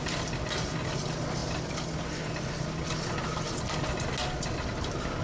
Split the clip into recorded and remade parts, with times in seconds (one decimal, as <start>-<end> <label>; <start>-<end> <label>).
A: 0.0-5.2 recorded